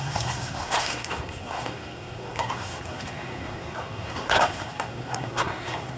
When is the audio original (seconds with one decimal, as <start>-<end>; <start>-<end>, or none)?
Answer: none